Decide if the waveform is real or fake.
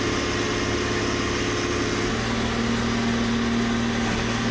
real